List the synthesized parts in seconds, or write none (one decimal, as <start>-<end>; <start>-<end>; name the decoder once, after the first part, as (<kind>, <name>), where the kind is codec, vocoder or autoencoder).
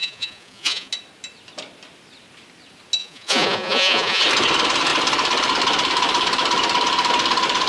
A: 0.0-0.9 (vocoder, Vocos); 3.0-4.2